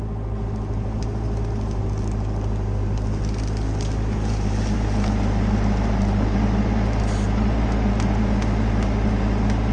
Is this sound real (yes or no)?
yes